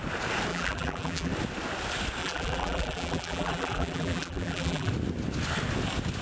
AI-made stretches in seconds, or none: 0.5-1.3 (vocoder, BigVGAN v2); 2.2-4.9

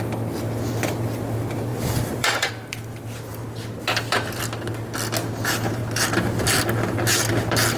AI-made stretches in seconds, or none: 1.7-2.5 (vocoder, BigVGAN v2)

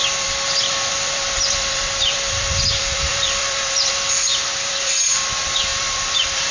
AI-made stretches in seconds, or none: 0.0-3.9 (vocoder, BigVGAN v2); 4.3-4.9; 5.7-6.5

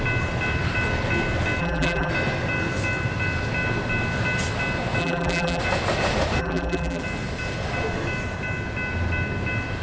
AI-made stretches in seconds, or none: 1.6-2.1 (vocoder, BigVGAN v2); 5.0-5.6; 6.4-7.0

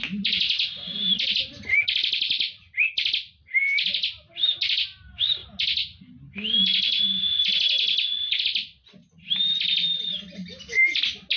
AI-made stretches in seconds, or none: none

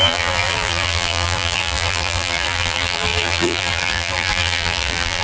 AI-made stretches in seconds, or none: 0.0-5.2 (vocoder, BigVGAN v2)

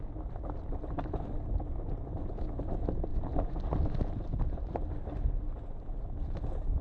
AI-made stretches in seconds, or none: 3.1-3.8 (vocoder, BigVGAN v2)

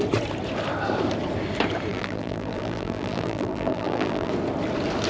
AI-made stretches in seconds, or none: 1.9-4.3 (vocoder, BigVGAN v2)